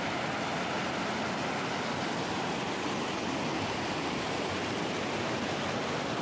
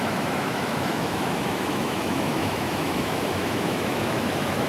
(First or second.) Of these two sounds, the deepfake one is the second